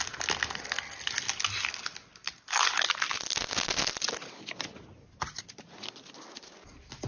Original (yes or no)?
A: yes